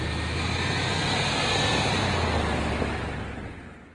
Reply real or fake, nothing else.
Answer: real